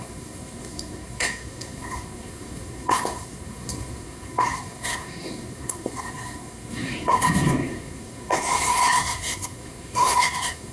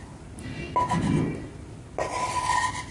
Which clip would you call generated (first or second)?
first